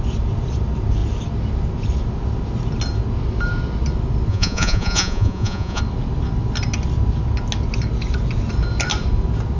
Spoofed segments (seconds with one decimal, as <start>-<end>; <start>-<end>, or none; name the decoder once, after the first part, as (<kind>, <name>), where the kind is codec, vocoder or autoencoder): 4.3-5.8 (vocoder, Vocos)

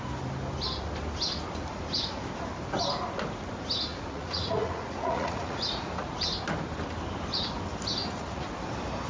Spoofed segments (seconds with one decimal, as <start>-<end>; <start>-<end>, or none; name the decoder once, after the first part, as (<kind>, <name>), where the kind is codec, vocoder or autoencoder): 3.9-6.1 (vocoder, Vocos); 8.0-8.5

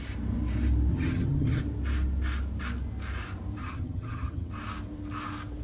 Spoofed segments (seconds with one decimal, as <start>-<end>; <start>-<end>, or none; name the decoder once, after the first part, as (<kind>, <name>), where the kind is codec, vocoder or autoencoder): 0.9-1.6 (vocoder, HiFi-GAN); 3.6-4.5

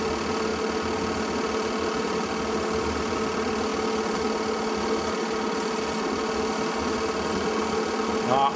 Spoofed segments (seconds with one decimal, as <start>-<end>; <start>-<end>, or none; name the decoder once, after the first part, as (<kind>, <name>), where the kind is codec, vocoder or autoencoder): none

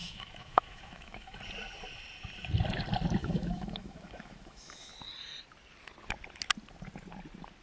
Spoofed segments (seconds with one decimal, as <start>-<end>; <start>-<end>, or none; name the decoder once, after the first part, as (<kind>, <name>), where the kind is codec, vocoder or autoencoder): 0.0-1.4 (autoencoder, DAC-VAE); 3.2-4.9

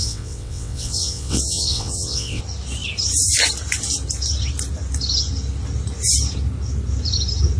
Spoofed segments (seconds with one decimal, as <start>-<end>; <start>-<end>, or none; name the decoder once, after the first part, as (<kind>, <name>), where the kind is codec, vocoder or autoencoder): 0.0-2.4 (vocoder, WaveNeXt)

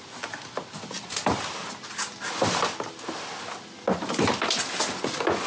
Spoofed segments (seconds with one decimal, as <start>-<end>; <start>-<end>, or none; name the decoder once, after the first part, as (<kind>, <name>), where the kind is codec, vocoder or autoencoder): none

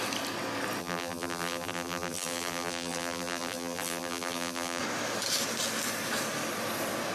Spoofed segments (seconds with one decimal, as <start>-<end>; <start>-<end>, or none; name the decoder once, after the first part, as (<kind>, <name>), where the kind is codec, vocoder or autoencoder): 0.8-4.8 (vocoder, BigVGAN v2)